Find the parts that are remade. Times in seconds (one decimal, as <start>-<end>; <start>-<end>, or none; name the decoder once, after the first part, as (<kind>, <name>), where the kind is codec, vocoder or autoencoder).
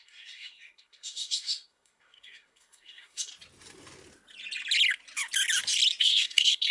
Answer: 0.0-3.3 (codec, SNAC); 6.0-6.7